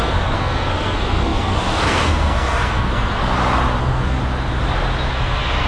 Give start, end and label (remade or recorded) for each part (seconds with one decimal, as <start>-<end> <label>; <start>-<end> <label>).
0.0-3.2 remade; 3.2-3.8 recorded; 3.8-4.2 remade; 4.2-5.1 recorded; 5.1-5.7 remade